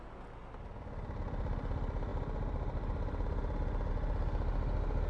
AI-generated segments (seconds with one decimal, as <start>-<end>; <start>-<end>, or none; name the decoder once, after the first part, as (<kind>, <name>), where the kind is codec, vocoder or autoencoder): none